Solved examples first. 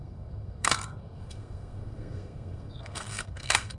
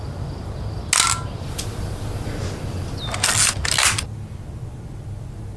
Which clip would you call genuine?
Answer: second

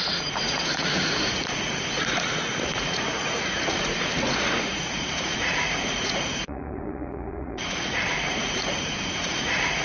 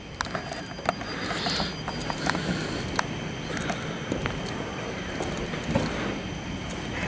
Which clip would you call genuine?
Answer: second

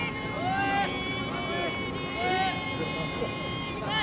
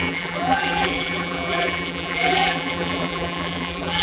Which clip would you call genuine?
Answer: first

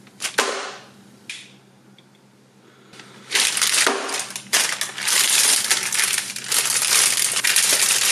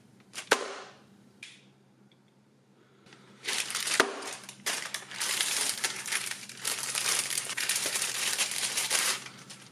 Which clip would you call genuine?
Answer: first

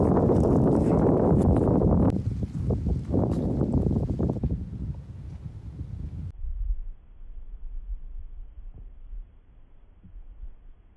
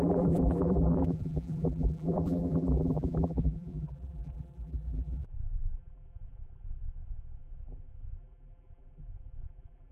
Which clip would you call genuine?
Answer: first